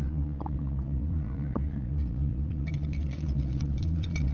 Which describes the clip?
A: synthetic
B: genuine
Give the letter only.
A